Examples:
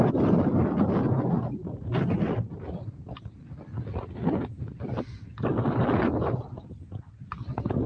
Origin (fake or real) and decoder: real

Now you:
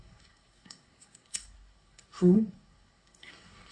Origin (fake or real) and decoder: fake, codec, SNAC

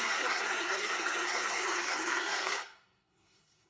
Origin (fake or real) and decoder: fake, codec, SNAC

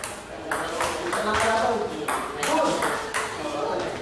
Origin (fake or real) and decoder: real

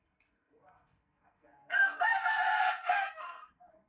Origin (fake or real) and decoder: fake, codec, SNAC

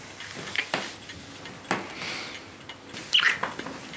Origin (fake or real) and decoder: real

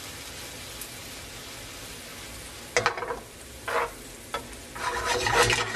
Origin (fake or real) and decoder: real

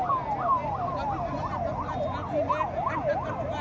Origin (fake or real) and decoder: real